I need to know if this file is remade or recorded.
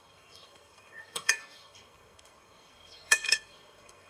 remade